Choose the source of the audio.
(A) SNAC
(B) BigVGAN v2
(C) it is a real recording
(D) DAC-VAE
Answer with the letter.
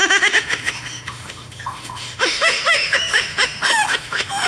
D